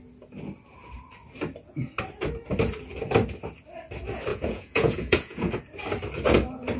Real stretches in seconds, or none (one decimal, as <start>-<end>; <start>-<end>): 0.0-4.3; 5.5-6.8